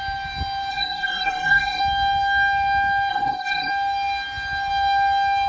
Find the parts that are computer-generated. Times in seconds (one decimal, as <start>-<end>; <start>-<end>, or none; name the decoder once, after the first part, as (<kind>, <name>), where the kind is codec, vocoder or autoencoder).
0.7-1.8 (codec, SNAC); 3.1-3.7